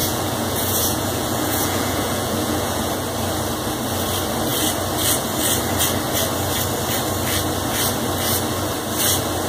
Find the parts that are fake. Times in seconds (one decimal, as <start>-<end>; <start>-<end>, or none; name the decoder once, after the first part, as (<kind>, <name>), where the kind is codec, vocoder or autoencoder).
0.0-2.9 (vocoder, Vocos)